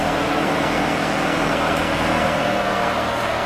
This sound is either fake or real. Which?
fake